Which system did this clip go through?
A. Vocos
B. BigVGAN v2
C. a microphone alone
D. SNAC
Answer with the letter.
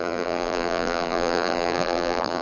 B